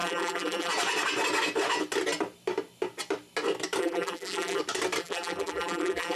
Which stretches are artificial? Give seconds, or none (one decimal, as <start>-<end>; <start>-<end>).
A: 0.0-0.7; 3.8-4.6; 5.0-6.2

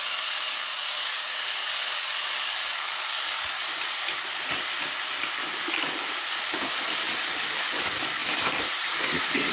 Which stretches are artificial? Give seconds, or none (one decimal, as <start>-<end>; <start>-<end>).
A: 0.0-3.6; 5.5-9.5

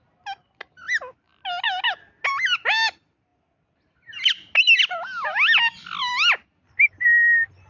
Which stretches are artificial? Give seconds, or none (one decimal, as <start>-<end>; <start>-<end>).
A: none

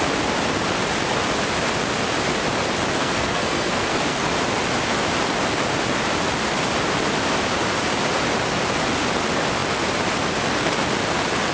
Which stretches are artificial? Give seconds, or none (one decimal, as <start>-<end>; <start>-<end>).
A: 3.0-4.2

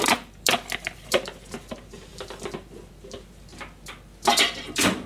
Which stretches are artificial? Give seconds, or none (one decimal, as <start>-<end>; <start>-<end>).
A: 0.0-3.5; 4.6-5.1

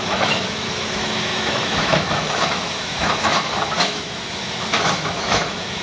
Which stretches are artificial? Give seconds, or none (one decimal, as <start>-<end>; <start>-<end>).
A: 0.0-5.8

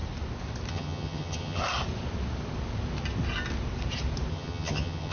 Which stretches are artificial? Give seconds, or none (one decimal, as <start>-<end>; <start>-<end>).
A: 0.7-1.6; 4.3-5.1